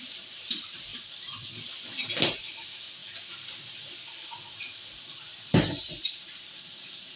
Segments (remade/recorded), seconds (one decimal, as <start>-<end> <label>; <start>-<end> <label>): 0.0-0.9 remade; 0.9-2.4 recorded; 2.4-3.0 remade; 3.0-4.5 recorded; 4.5-7.2 remade